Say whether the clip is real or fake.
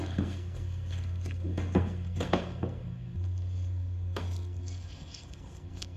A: fake